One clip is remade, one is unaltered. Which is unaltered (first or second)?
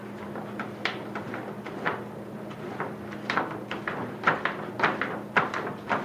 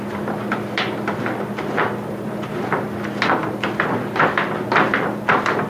second